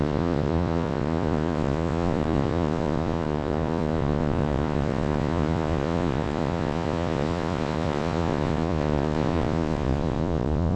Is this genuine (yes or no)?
no